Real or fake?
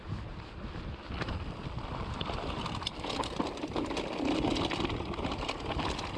real